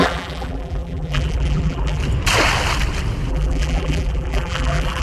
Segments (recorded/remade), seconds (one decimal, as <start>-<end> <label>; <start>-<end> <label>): 0.0-2.0 remade; 2.0-3.3 recorded; 3.3-5.0 remade